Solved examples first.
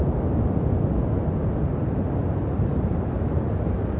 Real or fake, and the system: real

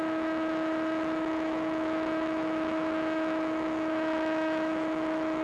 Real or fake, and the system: fake, autoencoder, DAC-VAE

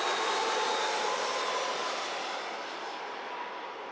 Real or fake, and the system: real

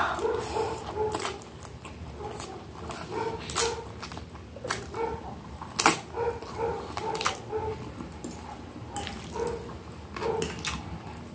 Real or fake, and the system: real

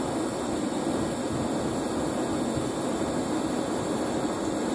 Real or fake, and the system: real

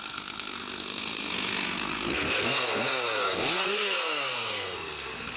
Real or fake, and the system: fake, codec, SNAC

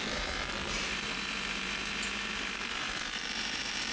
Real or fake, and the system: fake, vocoder, BigVGAN v2